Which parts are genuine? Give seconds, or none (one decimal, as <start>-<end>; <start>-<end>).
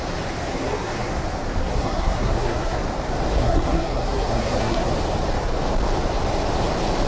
0.0-0.5; 1.1-1.6; 2.8-3.4; 4.9-7.1